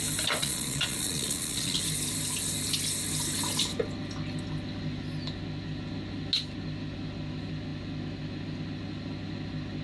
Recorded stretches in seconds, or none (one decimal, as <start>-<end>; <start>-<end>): 0.0-0.4; 1.8-9.8